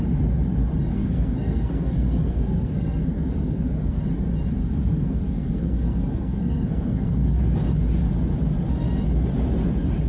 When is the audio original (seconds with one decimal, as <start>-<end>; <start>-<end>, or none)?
0.0-0.9; 4.0-4.6; 7.4-10.1

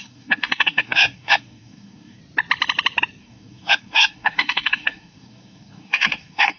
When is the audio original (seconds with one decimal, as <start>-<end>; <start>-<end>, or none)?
2.2-3.2